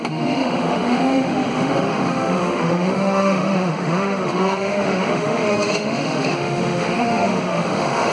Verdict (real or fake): fake